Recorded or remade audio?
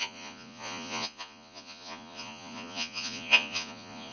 remade